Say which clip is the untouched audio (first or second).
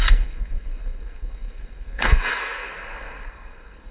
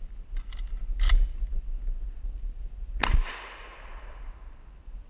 second